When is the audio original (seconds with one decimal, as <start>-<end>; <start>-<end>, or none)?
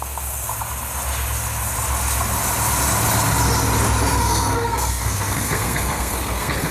0.5-4.2